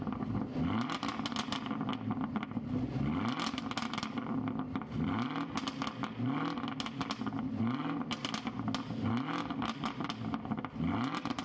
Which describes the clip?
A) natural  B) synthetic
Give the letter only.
A